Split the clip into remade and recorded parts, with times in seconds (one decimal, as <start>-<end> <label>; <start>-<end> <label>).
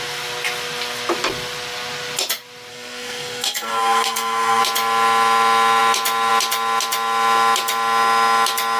0.0-2.7 recorded; 2.7-4.6 remade; 4.6-8.8 recorded